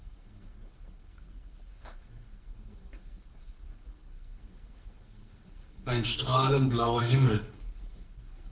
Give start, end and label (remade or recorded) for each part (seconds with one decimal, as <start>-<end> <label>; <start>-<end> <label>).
0.0-8.5 remade